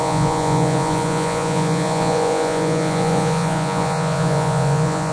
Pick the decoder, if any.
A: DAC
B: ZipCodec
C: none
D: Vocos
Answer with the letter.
D